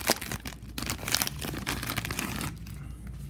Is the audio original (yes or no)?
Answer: yes